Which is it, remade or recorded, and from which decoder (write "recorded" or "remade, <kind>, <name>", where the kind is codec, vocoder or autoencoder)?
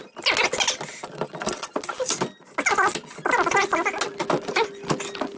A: recorded